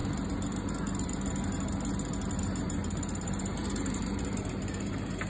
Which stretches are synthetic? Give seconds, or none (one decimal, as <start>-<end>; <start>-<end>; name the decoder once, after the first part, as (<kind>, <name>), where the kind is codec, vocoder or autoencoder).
2.3-5.3 (vocoder, BigVGAN v2)